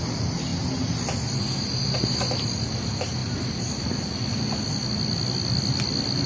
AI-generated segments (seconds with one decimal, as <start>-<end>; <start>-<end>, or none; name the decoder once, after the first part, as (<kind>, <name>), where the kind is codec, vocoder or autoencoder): none